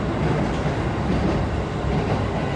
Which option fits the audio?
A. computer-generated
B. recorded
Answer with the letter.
B